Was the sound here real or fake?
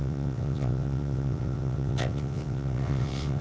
fake